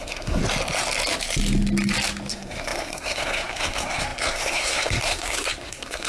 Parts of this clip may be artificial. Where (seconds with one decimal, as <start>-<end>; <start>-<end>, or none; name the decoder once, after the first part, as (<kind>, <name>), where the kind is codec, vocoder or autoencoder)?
0.0-0.4 (codec, SNAC); 2.3-6.1